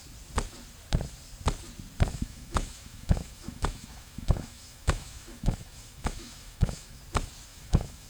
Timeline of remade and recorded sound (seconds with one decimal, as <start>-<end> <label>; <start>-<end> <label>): 0.0-2.1 recorded; 2.1-7.0 remade; 7.0-7.5 recorded; 7.5-8.1 remade